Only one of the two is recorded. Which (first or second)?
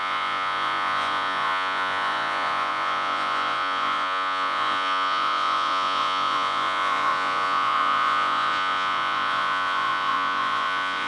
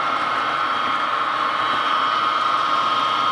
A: second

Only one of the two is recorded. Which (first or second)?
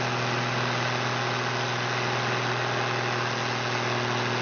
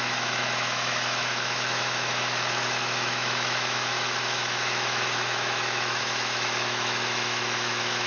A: first